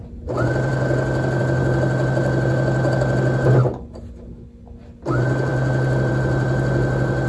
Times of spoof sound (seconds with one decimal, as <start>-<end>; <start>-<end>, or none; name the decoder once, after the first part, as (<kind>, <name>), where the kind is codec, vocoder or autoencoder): none